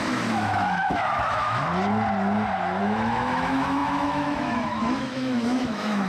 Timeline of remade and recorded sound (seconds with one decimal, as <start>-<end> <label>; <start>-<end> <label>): 0.0-1.7 remade; 1.7-2.8 recorded; 2.8-6.1 remade